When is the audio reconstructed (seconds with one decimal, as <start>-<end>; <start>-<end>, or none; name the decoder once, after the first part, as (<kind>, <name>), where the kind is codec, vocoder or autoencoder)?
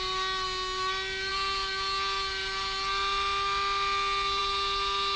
none